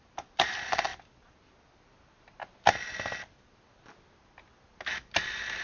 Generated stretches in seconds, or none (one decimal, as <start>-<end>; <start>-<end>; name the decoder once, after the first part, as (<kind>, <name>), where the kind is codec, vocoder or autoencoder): none